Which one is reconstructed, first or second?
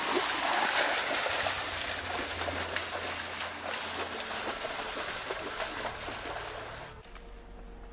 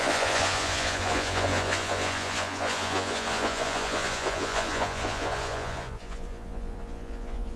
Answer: second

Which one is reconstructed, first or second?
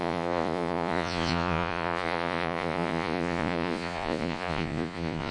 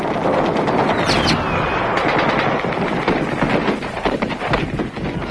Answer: first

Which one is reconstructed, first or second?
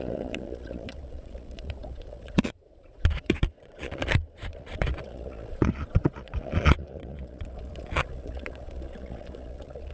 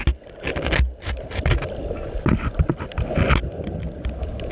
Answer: first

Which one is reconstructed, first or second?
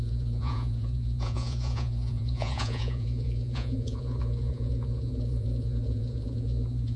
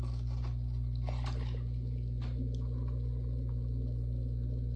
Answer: first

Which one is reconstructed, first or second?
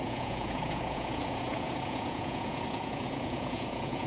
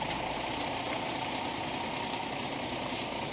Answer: first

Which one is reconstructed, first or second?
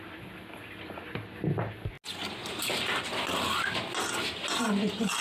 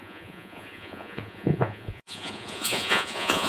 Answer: second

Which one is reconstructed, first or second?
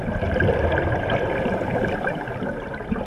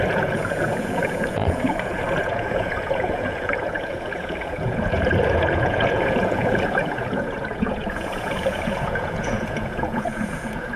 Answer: second